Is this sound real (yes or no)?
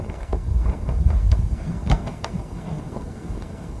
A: no